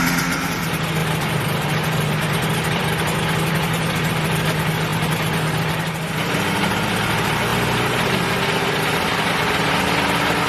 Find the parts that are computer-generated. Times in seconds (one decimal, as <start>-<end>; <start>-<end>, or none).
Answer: 1.0-2.8